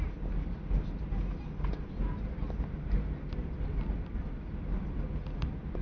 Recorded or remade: recorded